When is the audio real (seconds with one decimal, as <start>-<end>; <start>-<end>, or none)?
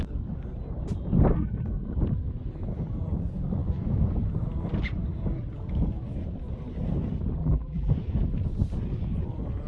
0.0-7.4; 7.9-9.7